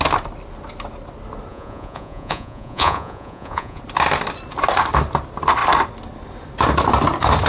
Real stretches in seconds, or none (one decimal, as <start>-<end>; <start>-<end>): 0.0-1.5; 3.8-7.5